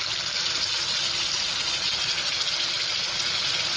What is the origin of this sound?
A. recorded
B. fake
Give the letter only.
A